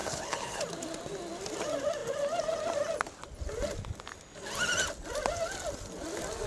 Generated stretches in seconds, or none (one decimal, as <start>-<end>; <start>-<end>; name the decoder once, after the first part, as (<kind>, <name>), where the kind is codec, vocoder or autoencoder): 0.0-0.6 (codec, HILCodec)